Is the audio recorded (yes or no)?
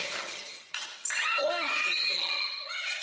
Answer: no